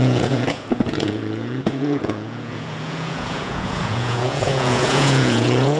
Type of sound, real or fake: fake